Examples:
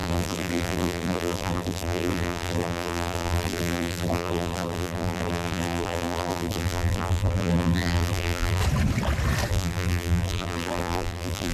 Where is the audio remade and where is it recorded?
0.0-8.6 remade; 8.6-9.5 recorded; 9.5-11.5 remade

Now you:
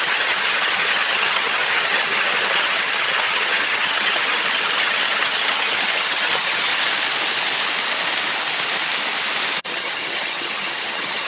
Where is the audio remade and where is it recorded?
0.0-6.7 remade; 6.7-9.6 recorded; 9.6-11.3 remade

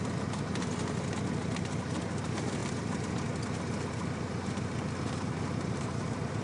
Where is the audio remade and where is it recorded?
0.0-0.7 remade; 0.7-2.1 recorded; 2.1-2.6 remade; 2.6-5.1 recorded; 5.1-6.4 remade

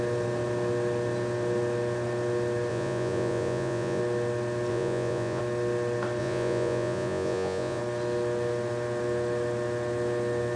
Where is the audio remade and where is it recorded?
0.0-2.7 recorded; 2.7-4.0 remade; 4.0-4.7 recorded; 4.7-5.4 remade; 5.4-6.2 recorded; 6.2-7.8 remade; 7.8-10.6 recorded

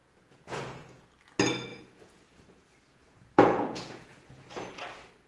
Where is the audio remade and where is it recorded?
0.0-1.1 remade; 1.1-1.7 recorded; 1.7-4.8 remade; 4.8-5.3 recorded

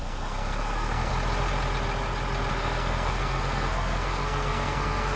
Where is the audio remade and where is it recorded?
0.0-1.1 remade; 1.1-2.5 recorded; 2.5-5.2 remade

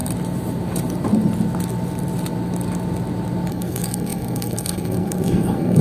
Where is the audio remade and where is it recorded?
0.0-3.5 recorded; 3.5-5.8 remade

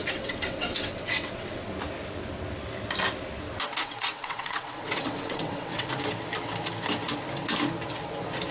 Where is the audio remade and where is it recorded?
0.0-1.7 remade; 1.7-3.8 recorded; 3.8-5.9 remade; 5.9-8.5 recorded